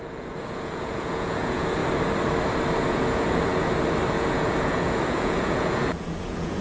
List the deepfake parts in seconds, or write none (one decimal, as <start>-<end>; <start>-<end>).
0.0-1.8; 2.9-3.5; 4.1-6.6